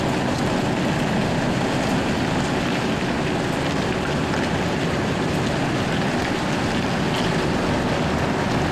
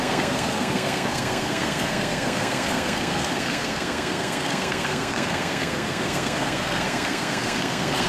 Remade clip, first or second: second